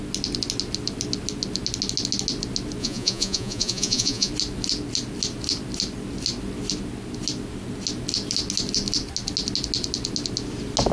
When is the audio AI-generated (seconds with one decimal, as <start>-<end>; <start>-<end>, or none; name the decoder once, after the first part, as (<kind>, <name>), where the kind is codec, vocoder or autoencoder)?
2.8-4.3 (vocoder, Vocos)